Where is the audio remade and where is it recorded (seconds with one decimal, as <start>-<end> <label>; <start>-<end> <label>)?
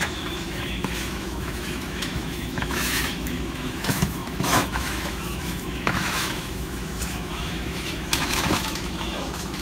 0.0-9.6 remade